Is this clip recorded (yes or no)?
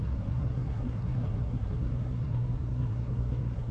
no